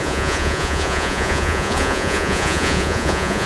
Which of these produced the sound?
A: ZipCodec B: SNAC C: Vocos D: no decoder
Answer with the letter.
C